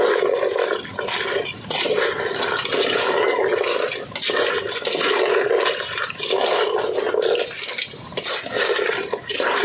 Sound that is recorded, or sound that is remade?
recorded